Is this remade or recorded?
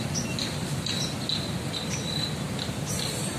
recorded